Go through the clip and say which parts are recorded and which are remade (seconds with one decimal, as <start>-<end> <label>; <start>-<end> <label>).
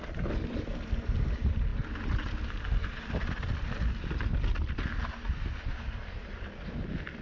0.0-7.2 recorded